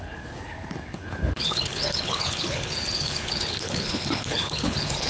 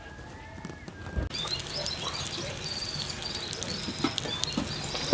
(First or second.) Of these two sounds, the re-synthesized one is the first